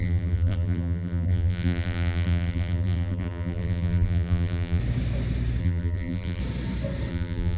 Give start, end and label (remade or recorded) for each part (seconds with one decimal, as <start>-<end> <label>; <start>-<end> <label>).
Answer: 0.0-4.8 remade; 4.8-5.6 recorded; 5.6-6.4 remade; 6.4-7.1 recorded; 7.1-7.6 remade